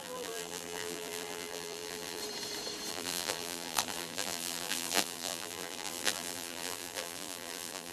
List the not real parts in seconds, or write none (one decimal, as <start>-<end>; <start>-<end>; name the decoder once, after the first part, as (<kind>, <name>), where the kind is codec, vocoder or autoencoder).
0.0-2.2 (vocoder, BigVGAN v2); 2.9-7.9